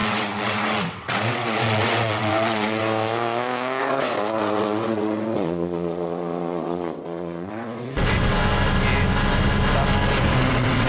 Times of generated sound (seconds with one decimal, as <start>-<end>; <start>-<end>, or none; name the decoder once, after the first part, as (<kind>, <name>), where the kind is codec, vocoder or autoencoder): 0.0-2.8 (vocoder, WaveNeXt); 3.8-8.4; 10.5-10.9